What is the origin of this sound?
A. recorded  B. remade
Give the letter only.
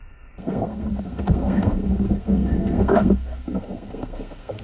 B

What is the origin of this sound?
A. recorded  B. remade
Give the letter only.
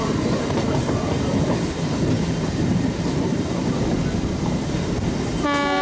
A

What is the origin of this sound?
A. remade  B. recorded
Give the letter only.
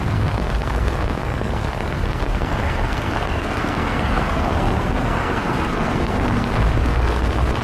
A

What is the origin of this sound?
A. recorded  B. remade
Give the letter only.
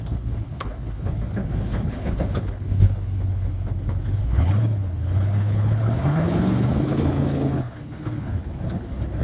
B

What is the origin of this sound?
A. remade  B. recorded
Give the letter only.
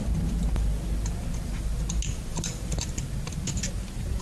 A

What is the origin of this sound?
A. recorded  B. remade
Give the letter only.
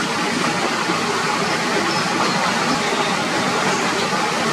A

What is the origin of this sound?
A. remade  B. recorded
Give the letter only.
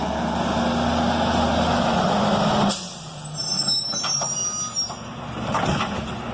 B